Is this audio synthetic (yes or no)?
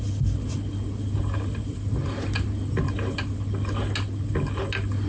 no